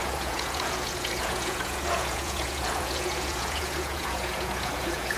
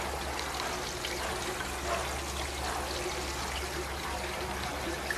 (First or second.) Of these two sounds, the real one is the second